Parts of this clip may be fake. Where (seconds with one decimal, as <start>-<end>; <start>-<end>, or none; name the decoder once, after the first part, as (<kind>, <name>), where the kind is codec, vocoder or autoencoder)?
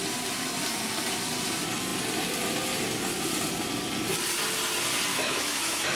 5.1-6.0 (autoencoder, DAC-VAE)